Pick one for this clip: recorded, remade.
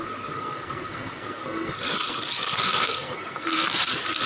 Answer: remade